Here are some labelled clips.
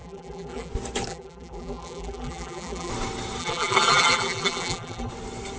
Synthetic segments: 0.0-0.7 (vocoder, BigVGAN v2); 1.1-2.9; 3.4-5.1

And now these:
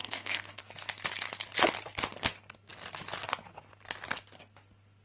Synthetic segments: 0.0-0.6 (codec, SNAC)

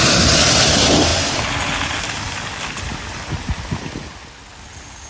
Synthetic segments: none

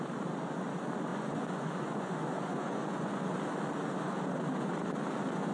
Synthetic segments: 1.1-3.2 (vocoder, Vocos)

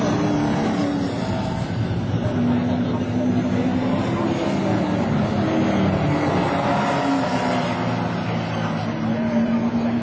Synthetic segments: none